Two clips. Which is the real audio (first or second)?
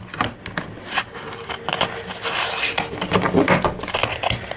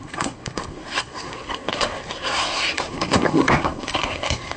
first